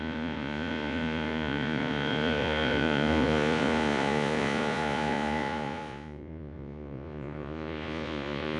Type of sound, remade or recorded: remade